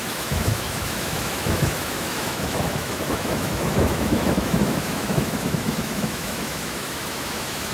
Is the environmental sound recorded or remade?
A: remade